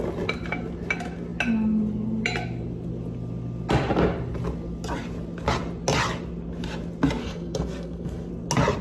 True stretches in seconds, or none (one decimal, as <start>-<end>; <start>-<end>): 0.0-7.2; 8.3-8.8